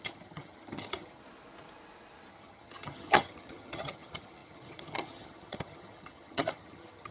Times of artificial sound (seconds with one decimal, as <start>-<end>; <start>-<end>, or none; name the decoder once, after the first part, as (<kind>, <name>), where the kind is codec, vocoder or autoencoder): 0.0-1.2 (vocoder, HiFi-GAN); 2.3-7.1